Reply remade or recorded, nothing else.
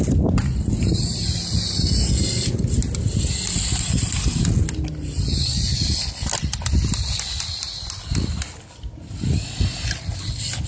recorded